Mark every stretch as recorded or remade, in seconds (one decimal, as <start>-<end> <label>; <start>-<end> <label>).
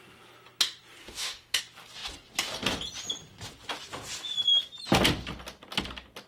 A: 0.0-1.0 recorded; 1.0-1.6 remade; 1.6-6.3 recorded